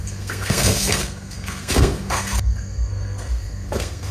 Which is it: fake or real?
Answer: fake